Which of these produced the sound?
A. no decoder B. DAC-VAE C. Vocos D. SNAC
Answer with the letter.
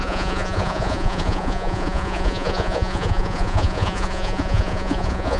C